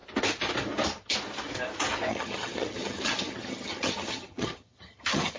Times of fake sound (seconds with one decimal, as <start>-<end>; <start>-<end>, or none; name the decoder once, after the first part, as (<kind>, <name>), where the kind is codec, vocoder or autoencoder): 2.1-5.4 (vocoder, HiFi-GAN)

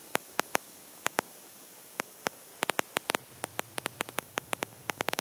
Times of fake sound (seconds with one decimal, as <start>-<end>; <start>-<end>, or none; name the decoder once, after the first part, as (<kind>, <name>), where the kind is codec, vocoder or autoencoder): 0.0-2.5 (codec, DAC); 4.1-5.2